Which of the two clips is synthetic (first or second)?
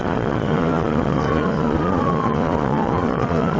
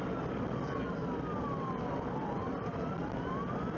first